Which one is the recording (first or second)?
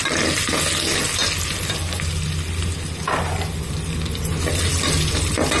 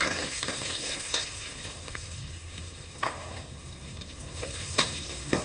first